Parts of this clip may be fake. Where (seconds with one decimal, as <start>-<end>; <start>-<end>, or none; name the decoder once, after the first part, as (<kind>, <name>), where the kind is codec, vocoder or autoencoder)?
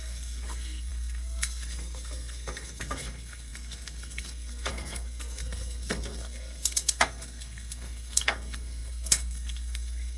0.0-10.2 (codec, SNAC)